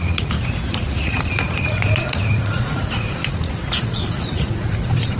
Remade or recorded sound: remade